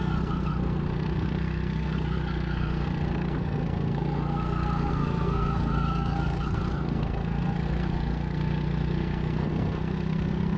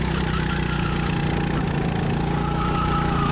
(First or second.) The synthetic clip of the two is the first